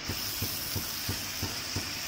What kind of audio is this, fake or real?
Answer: real